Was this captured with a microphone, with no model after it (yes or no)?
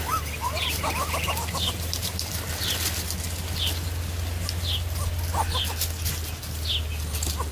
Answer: yes